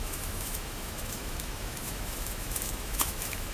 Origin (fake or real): fake